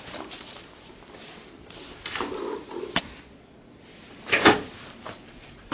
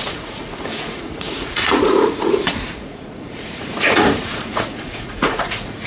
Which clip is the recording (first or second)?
first